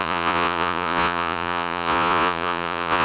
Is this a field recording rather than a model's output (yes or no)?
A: no